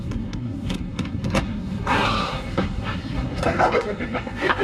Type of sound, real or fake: fake